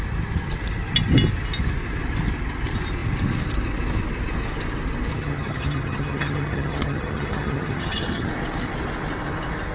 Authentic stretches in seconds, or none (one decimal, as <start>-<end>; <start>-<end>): 0.0-5.1; 8.3-9.7